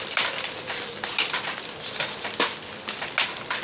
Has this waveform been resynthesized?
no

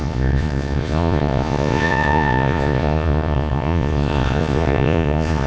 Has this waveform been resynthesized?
yes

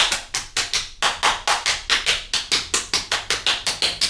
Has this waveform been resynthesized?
no